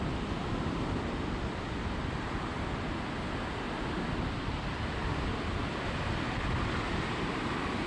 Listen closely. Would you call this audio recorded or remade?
recorded